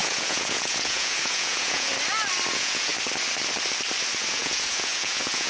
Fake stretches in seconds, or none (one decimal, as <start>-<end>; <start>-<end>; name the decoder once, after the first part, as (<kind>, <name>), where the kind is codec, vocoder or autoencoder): 0.0-1.9 (vocoder, Vocos); 2.5-2.9; 4.3-5.5